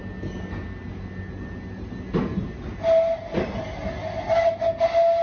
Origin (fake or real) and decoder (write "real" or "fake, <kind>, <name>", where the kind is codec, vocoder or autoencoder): real